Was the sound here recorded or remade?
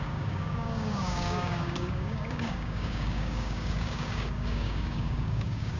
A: remade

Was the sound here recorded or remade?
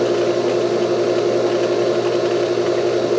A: recorded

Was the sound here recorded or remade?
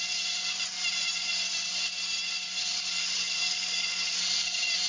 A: recorded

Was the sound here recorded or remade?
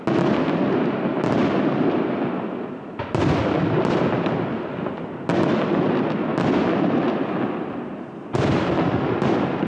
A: recorded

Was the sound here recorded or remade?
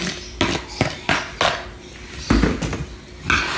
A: recorded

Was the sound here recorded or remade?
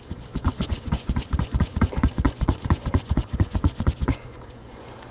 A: remade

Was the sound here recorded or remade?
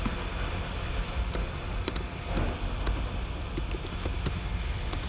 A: recorded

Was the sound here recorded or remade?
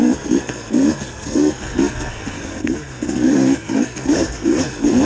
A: remade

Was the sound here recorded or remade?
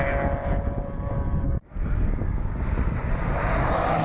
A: recorded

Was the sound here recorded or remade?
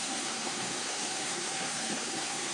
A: remade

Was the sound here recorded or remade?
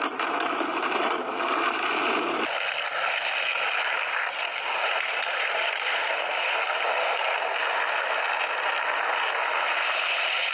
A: recorded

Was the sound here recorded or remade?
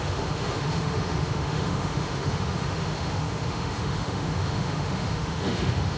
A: remade